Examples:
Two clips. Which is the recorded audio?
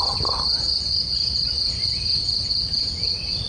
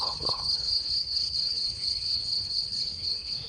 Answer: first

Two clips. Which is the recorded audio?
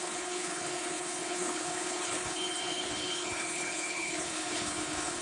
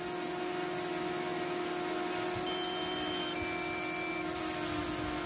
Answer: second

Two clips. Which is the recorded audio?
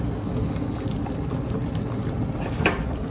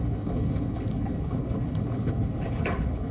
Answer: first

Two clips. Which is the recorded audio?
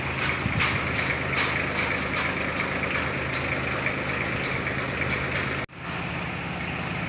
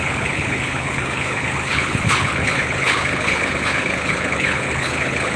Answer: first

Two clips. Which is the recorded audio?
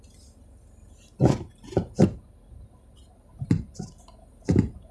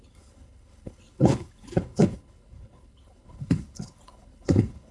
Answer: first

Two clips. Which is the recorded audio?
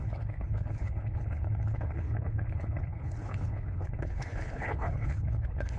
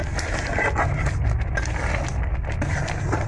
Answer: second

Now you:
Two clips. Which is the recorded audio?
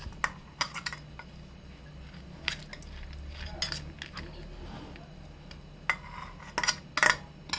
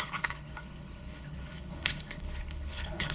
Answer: first